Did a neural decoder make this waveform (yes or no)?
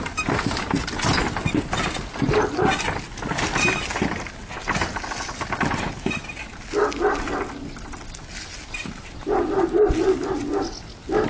no